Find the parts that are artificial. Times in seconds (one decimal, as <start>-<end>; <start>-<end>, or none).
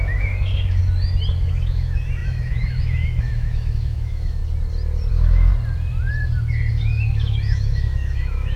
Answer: 0.0-0.8; 1.5-4.4; 5.1-5.5; 6.7-8.6